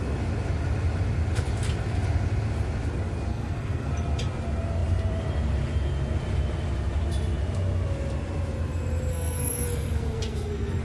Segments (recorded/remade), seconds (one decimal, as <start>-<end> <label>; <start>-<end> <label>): 0.0-3.3 recorded; 3.3-3.9 remade; 3.9-9.1 recorded; 9.1-10.8 remade